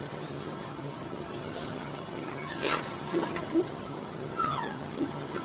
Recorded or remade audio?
remade